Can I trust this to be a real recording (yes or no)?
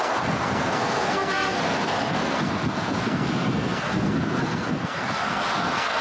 no